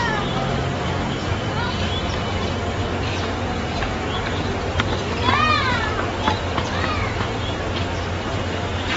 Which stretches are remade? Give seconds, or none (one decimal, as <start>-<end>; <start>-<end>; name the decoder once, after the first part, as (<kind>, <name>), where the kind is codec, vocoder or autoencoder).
1.2-1.7 (vocoder, Vocos)